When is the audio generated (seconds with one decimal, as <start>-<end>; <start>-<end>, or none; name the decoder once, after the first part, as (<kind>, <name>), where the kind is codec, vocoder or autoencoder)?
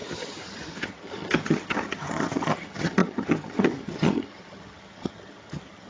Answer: 0.0-5.9 (vocoder, HiFi-GAN)